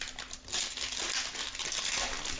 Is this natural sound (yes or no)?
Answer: yes